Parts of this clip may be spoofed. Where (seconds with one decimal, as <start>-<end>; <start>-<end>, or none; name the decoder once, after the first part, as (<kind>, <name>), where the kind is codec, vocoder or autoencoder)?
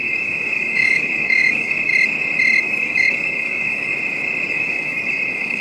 0.0-1.9 (codec, DAC); 2.6-3.9; 4.5-5.6